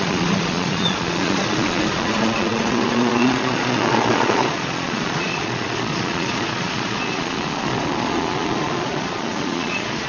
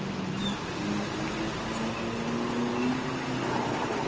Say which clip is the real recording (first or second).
second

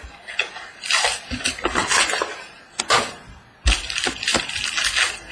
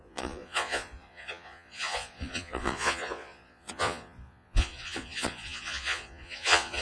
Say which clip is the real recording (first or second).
first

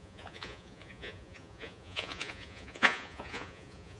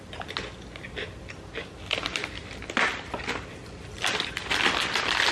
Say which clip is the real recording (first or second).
second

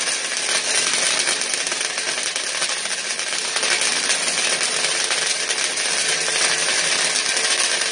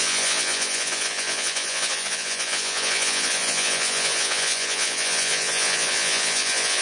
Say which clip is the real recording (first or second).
first